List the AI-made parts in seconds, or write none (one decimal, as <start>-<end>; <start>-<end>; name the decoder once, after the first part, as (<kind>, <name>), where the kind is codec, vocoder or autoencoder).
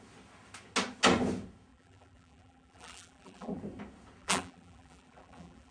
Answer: 1.7-3.6 (vocoder, BigVGAN v2); 4.2-5.7